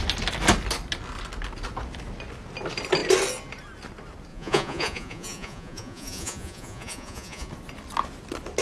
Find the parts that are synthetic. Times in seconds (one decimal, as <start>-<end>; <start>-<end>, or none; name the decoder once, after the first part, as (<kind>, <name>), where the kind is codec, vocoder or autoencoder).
4.3-7.5 (vocoder, Vocos)